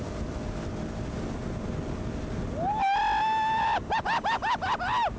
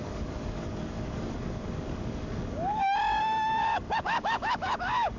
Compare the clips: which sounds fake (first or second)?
second